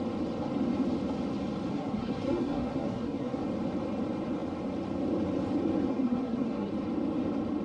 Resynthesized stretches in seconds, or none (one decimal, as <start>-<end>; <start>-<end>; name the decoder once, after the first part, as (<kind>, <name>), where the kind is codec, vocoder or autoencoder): 1.7-3.4 (codec, SNAC); 5.9-6.7